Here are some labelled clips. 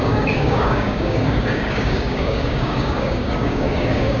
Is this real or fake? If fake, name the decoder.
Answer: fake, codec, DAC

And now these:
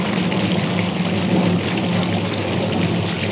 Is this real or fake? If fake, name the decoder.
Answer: real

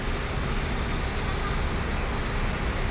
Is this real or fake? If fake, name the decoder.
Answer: real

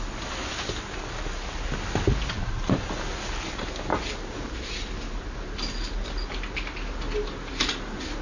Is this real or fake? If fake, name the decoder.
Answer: real